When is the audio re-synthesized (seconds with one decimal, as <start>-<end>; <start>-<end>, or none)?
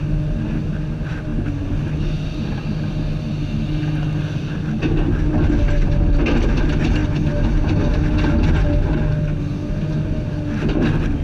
none